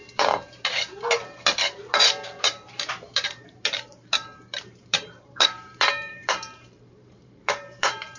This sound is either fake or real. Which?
fake